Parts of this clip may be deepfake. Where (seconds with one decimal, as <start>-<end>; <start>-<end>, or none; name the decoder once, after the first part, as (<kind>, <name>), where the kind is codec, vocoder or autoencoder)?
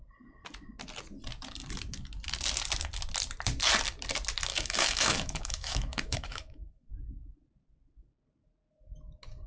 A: 4.5-6.9 (autoencoder, DAC-VAE)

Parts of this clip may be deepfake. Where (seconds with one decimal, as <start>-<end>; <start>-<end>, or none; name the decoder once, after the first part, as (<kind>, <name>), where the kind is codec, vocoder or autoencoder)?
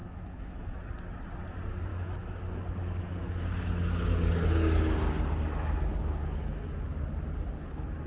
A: 0.0-0.8 (autoencoder, DAC-VAE); 1.9-2.4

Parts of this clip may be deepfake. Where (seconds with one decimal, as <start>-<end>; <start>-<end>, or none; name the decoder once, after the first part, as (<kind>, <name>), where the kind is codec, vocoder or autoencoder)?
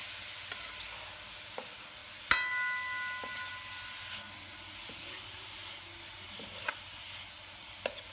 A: none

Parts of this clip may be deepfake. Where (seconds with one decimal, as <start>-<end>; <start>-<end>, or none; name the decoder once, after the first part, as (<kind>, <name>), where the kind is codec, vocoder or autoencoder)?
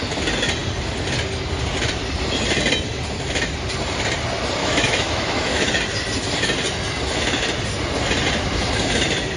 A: 4.6-5.7 (autoencoder, DAC-VAE)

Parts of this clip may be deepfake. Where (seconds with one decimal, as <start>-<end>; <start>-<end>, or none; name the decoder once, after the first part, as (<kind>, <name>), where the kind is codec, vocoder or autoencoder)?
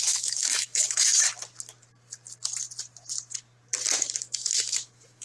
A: 0.0-1.1 (autoencoder, DAC-VAE); 4.2-5.2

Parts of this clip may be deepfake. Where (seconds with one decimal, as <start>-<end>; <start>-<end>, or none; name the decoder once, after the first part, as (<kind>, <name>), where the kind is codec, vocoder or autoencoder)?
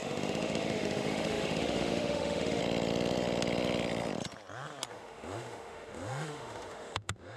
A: 0.0-2.6 (autoencoder, DAC-VAE); 4.9-7.4